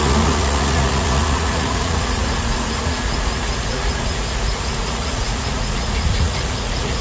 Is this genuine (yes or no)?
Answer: no